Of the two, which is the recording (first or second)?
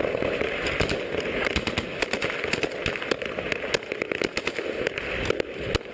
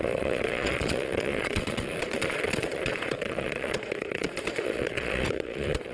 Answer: first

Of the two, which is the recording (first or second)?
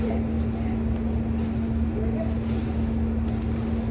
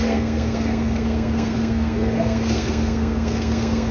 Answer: first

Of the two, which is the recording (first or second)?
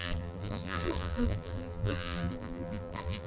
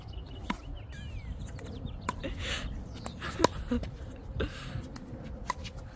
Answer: second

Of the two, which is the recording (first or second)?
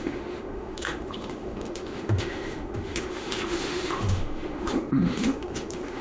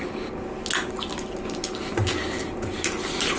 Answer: second